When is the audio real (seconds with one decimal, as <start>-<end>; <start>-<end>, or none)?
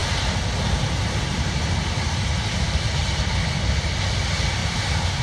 0.0-4.6